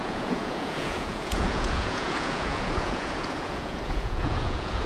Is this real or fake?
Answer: fake